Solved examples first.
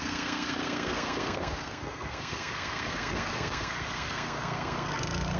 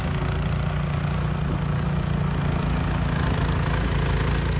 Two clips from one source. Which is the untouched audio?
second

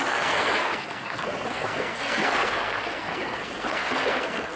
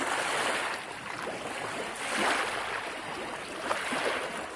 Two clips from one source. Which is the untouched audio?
second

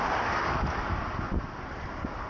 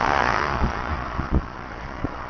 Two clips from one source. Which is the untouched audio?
first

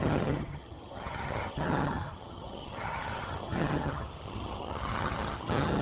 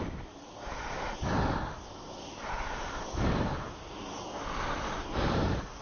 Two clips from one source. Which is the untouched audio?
second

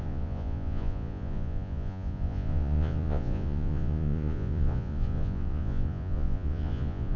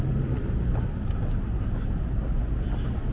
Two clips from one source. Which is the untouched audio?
second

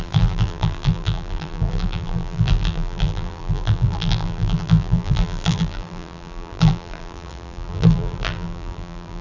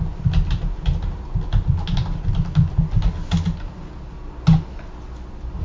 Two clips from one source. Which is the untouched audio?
second